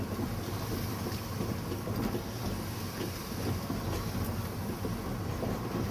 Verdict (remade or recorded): recorded